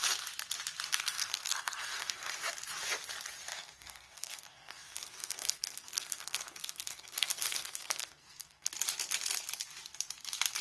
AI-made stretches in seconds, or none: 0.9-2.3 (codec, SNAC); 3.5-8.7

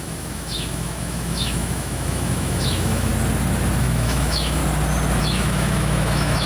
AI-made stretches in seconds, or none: 0.0-3.1 (autoencoder, DAC-VAE); 3.8-4.6; 5.2-6.5

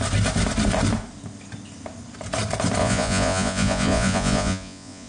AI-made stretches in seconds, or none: 2.8-5.1 (vocoder, Vocos)

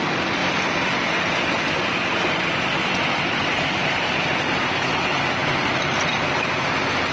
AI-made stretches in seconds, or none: 0.4-4.7 (vocoder, BigVGAN v2)

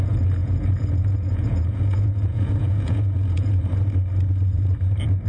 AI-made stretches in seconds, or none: 0.4-3.6 (vocoder, Vocos)

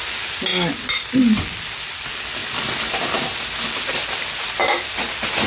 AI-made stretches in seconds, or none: none

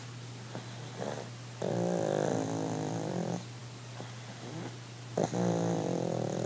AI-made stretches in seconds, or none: none